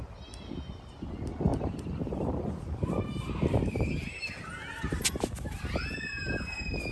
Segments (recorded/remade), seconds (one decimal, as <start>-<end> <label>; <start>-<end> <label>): 0.0-1.5 recorded; 1.5-5.6 remade; 5.6-6.9 recorded